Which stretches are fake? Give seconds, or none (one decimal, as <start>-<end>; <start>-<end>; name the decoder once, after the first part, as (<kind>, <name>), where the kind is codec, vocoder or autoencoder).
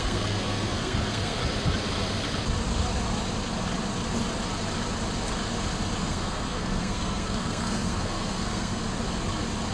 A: 0.0-1.4 (codec, SNAC); 6.0-8.8